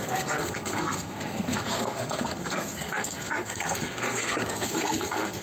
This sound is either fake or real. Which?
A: fake